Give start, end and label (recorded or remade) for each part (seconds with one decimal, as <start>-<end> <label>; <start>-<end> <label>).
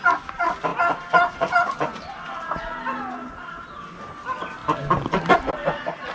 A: 0.0-4.6 recorded; 4.6-5.5 remade; 5.5-6.1 recorded